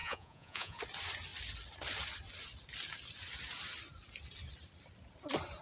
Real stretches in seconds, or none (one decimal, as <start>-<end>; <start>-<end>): 0.8-5.6